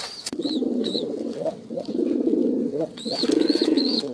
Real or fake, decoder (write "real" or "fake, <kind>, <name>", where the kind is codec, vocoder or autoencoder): fake, vocoder, WaveNeXt